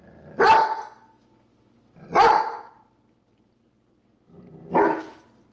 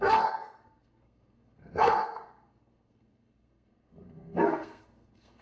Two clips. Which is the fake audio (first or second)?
second